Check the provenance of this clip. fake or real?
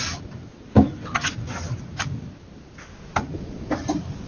real